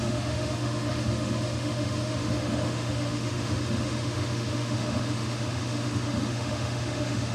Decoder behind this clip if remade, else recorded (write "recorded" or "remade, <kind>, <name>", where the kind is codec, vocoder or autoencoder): remade, autoencoder, DAC-VAE